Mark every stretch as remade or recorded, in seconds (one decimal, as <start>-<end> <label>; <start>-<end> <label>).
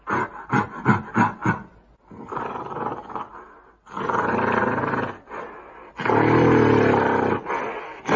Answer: 0.0-8.2 recorded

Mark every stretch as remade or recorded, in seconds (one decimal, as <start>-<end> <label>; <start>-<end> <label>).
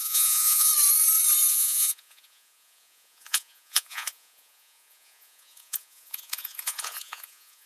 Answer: 0.0-0.7 remade; 0.7-1.5 recorded; 1.5-7.7 remade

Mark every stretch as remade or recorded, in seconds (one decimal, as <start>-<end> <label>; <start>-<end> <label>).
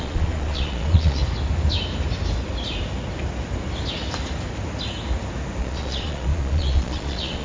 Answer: 0.0-1.2 remade; 1.2-5.6 recorded; 5.6-7.4 remade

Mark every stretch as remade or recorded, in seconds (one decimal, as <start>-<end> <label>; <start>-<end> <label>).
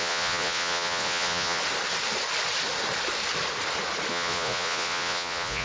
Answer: 0.0-1.6 remade; 1.6-4.1 recorded; 4.1-5.6 remade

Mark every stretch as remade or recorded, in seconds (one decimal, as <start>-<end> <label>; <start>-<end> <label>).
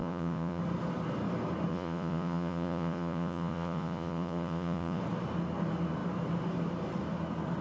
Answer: 0.0-0.6 remade; 0.6-1.7 recorded; 1.7-5.0 remade; 5.0-7.6 recorded